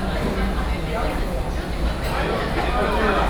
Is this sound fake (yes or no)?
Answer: no